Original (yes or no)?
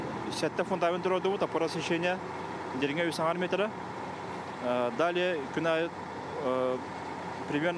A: yes